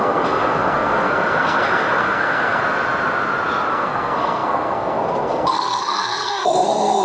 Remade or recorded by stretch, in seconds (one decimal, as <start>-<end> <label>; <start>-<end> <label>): 0.0-2.6 remade; 2.6-3.7 recorded; 3.7-7.0 remade